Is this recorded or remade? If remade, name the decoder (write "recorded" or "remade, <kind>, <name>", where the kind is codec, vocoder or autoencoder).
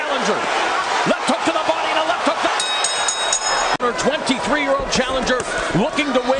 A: recorded